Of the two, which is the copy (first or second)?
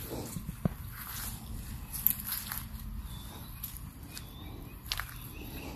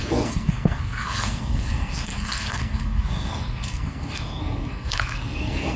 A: second